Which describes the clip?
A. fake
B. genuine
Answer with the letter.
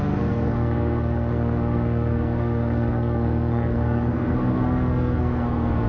A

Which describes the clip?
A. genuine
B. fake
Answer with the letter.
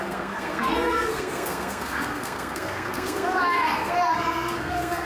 B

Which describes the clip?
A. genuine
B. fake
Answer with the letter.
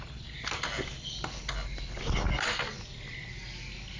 A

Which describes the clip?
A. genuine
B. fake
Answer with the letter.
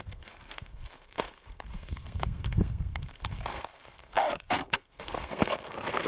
B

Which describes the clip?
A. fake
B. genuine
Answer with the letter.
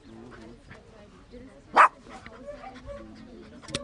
B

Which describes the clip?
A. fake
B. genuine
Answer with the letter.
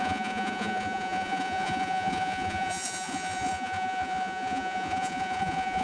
A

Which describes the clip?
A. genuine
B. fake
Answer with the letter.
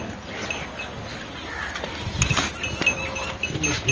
A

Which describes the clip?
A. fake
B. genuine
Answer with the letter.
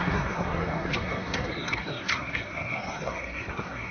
A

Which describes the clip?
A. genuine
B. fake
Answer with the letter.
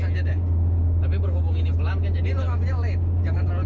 A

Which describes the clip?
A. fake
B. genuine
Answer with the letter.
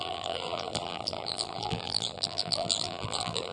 A